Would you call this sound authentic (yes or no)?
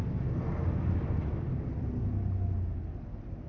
yes